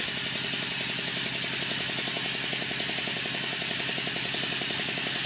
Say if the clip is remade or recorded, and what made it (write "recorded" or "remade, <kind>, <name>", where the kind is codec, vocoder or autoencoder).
recorded